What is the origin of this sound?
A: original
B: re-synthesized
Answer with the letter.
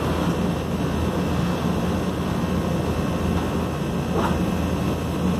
A